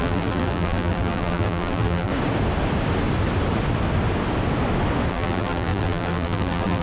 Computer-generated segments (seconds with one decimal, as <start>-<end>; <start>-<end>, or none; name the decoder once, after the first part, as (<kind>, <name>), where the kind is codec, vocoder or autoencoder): 0.0-2.1 (vocoder, BigVGAN v2); 5.1-6.8